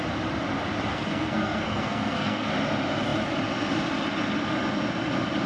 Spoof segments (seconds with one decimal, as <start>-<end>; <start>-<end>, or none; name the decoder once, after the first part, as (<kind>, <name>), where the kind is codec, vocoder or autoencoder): 0.9-2.5 (codec, SNAC)

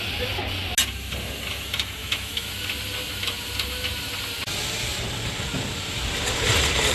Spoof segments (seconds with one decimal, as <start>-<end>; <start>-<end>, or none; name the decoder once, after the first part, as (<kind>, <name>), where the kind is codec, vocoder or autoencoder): 2.0-2.5 (autoencoder, DAC-VAE)